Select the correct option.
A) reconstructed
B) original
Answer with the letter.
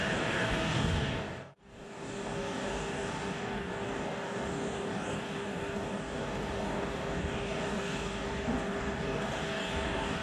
A